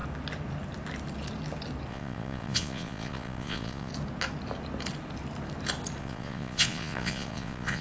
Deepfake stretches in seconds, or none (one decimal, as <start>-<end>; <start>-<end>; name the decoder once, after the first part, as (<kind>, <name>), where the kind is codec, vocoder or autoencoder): 1.9-3.9 (vocoder, Vocos); 6.0-7.8